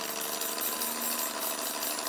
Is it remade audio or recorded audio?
recorded